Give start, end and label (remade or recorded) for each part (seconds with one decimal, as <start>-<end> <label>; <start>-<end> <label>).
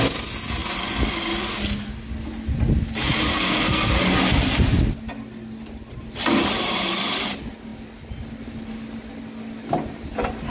0.0-3.3 recorded; 3.3-3.9 remade; 3.9-10.5 recorded